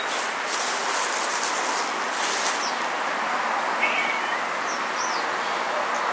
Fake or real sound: real